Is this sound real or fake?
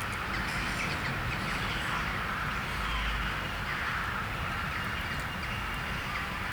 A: real